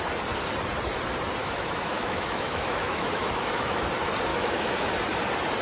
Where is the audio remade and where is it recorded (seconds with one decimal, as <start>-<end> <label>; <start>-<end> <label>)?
0.0-1.4 recorded; 1.4-3.8 remade; 3.8-4.3 recorded; 4.3-4.9 remade; 4.9-5.6 recorded